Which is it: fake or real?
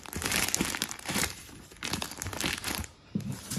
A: fake